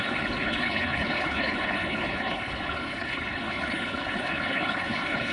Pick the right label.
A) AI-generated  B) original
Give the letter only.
A